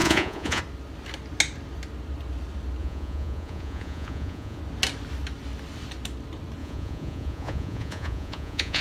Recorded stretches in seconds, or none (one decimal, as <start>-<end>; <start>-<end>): 0.6-2.8; 4.6-6.6